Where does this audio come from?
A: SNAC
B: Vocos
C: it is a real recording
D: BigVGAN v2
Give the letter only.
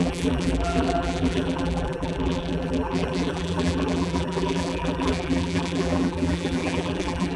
D